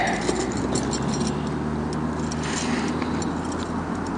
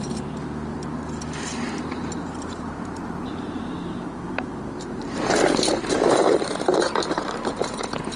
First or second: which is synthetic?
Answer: second